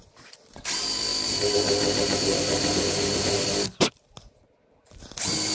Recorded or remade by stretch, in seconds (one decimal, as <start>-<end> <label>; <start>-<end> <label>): 0.0-5.5 recorded